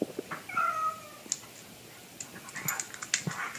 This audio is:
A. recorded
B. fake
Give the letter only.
A